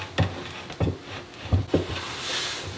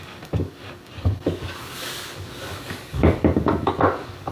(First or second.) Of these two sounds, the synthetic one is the second